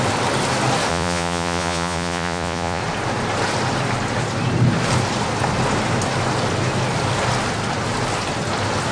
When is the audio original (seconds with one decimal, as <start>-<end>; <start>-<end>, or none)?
0.0-0.9; 2.8-8.9